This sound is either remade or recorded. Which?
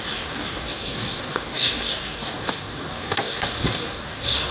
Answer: remade